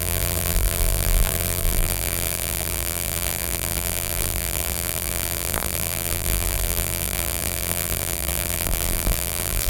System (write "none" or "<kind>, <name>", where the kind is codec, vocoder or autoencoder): vocoder, BigVGAN v2